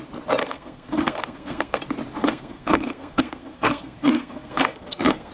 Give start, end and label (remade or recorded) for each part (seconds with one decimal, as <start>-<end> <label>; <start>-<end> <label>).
0.0-0.4 recorded; 0.4-1.8 remade; 1.8-2.2 recorded; 2.2-5.3 remade